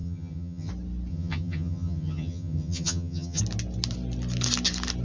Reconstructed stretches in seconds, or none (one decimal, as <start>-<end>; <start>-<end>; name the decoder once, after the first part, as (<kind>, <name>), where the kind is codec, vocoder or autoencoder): 0.0-0.7 (vocoder, HiFi-GAN); 1.1-3.4